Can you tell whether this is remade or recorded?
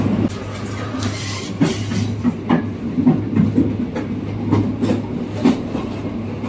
recorded